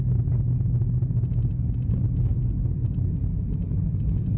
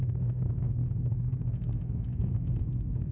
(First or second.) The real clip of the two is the first